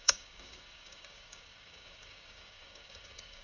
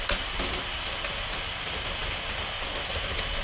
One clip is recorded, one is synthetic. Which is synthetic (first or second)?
first